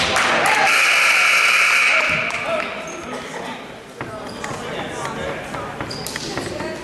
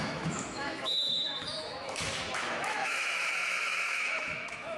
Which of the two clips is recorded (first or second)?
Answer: first